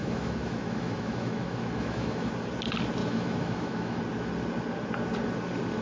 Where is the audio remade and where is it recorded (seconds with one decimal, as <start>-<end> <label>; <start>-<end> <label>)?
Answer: 0.0-2.3 remade; 2.3-3.0 recorded; 3.0-4.0 remade; 4.0-5.8 recorded